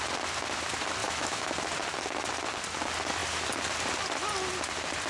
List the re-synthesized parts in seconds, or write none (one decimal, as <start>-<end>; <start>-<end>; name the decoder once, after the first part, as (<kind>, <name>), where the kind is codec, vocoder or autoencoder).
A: 1.0-1.5 (autoencoder, DAC-VAE)